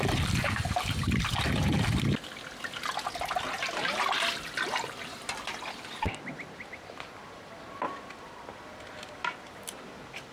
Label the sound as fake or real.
fake